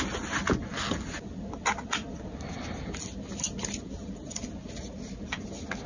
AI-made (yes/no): no